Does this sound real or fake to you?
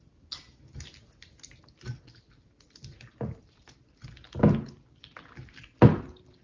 real